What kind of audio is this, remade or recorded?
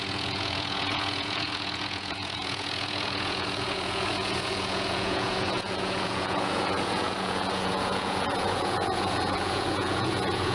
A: remade